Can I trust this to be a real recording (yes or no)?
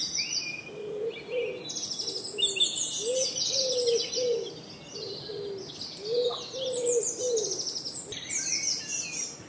yes